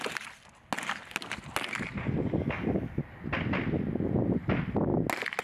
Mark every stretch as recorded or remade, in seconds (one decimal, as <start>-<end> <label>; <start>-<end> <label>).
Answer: 0.0-2.4 recorded; 2.4-3.0 remade; 3.0-5.4 recorded